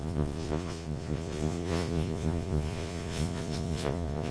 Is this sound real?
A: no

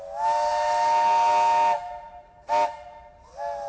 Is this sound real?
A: yes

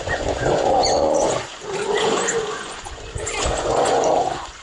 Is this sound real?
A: no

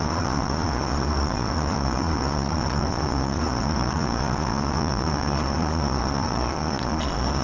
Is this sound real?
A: no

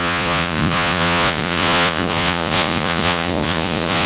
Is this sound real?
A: no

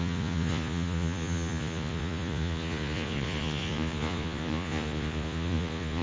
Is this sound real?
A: no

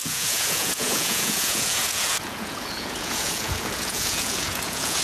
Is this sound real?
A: no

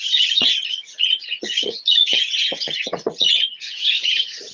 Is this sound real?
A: no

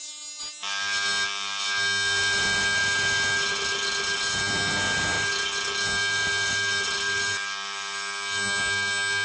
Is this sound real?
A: yes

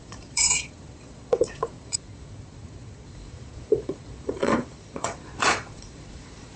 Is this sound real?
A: no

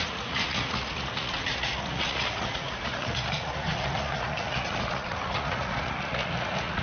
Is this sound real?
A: no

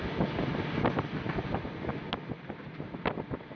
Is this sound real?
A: yes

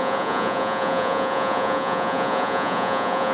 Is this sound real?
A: no